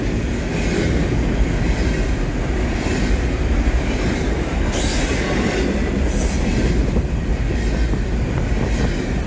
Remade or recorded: recorded